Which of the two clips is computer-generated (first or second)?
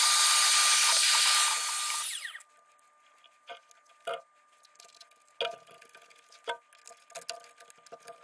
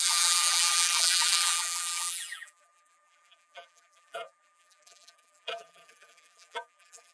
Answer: second